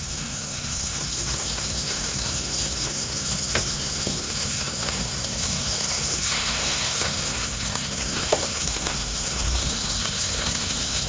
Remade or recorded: remade